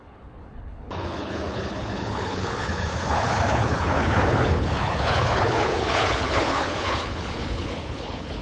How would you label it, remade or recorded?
remade